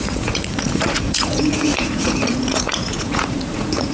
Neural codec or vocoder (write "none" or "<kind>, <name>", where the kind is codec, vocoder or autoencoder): vocoder, Vocos